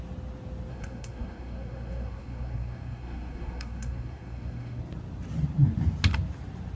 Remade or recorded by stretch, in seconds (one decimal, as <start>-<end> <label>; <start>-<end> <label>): 0.0-0.7 recorded; 0.7-4.8 remade; 4.8-6.8 recorded